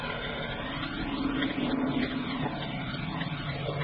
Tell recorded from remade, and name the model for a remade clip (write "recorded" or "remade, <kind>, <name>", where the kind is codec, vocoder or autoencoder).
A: recorded